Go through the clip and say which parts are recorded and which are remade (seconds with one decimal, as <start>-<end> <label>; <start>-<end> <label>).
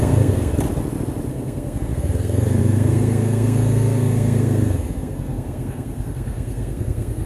0.0-0.5 remade; 0.5-1.3 recorded; 1.3-7.3 remade